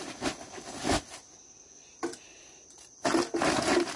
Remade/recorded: recorded